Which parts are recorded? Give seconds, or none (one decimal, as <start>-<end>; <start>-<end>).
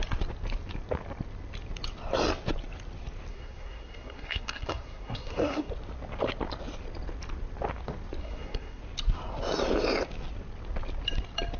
0.0-3.3; 5.7-8.2; 8.8-11.6